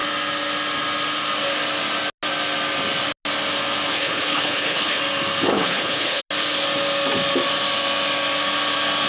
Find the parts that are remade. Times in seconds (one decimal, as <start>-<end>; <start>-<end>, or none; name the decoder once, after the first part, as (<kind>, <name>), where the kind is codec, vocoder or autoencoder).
3.9-5.0 (codec, HILCodec); 5.5-6.2